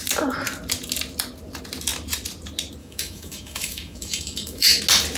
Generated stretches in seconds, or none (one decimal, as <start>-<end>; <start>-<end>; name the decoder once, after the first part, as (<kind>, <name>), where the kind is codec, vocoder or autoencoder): 2.8-4.8 (autoencoder, DAC-VAE)

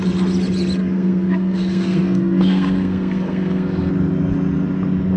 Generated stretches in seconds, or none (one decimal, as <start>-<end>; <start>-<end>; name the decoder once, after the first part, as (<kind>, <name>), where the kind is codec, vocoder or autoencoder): 0.8-3.9 (codec, SNAC)

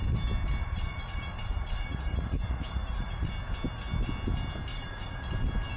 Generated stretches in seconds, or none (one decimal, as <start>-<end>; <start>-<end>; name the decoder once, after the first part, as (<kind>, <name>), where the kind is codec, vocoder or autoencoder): 0.6-3.3 (vocoder, Vocos); 4.7-5.3